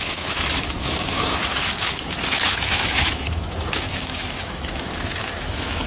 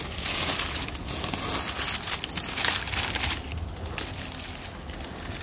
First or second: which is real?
second